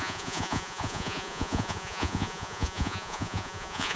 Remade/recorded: remade